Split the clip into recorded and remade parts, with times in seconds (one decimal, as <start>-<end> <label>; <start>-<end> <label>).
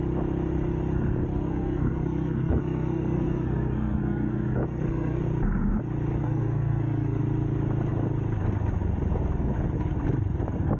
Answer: 0.0-1.3 recorded; 1.3-5.2 remade; 5.2-6.2 recorded; 6.2-7.2 remade; 7.2-10.8 recorded